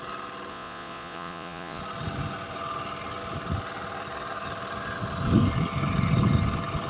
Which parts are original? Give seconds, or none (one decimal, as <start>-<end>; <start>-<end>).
0.0-0.5; 1.8-6.9